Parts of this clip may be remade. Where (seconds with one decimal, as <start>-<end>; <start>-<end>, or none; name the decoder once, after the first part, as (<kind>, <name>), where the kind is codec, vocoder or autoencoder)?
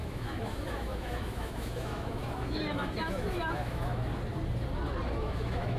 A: 0.0-4.1 (autoencoder, DAC-VAE); 5.2-5.8